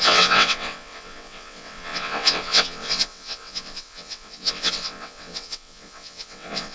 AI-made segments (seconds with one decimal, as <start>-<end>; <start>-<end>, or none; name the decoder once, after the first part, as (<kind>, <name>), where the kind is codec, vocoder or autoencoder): 0.0-6.7 (vocoder, WaveNeXt)